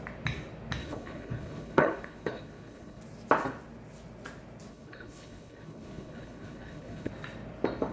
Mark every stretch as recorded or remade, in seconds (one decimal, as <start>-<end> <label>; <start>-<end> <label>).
0.0-0.8 recorded; 0.8-3.0 remade; 3.0-4.7 recorded; 4.7-7.1 remade; 7.1-7.9 recorded